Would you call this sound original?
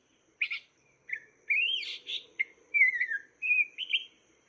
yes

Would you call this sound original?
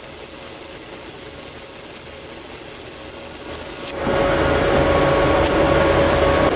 yes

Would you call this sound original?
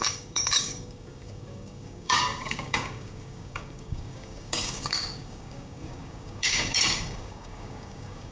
no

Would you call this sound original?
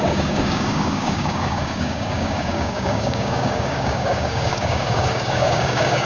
no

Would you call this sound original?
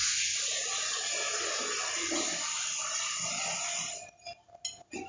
yes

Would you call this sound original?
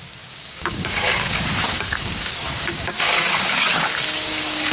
no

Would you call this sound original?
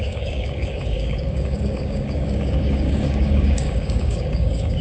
no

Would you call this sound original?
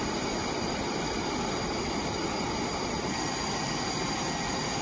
yes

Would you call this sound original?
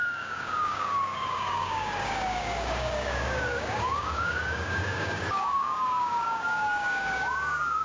no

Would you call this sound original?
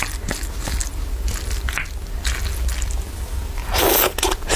yes